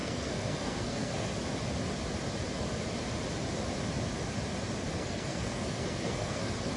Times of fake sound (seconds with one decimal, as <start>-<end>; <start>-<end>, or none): 0.0-1.3; 4.9-6.8